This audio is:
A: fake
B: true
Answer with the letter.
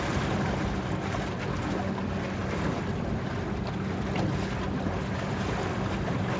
B